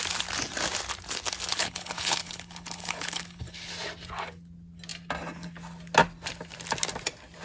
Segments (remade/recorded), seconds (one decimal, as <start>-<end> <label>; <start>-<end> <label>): 0.0-1.5 recorded; 1.5-3.7 remade; 3.7-7.4 recorded